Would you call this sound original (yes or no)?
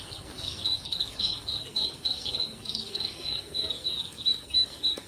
no